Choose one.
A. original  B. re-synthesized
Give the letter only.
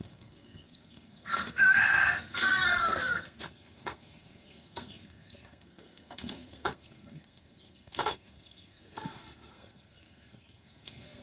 B